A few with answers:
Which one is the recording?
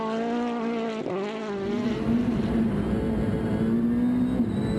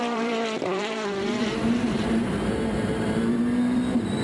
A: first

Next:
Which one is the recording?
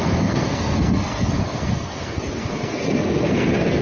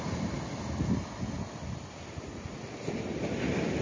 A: second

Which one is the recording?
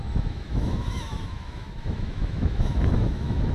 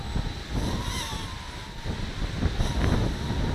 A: second